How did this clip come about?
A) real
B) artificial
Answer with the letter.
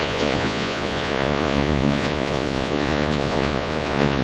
B